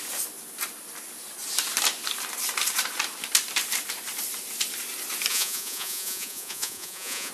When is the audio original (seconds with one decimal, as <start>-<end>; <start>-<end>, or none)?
0.0-5.3